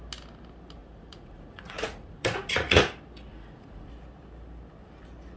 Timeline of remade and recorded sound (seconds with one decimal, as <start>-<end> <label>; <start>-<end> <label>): 0.0-0.8 recorded; 0.8-2.9 remade; 2.9-3.3 recorded; 3.3-3.9 remade; 3.9-5.4 recorded